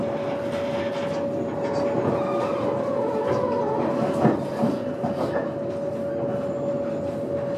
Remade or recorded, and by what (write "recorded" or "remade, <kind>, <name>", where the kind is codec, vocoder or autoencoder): recorded